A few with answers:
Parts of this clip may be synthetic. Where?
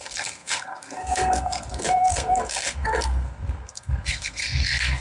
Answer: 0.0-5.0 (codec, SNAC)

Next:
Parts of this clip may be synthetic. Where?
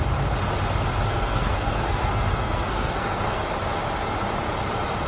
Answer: 1.1-3.4 (codec, SNAC)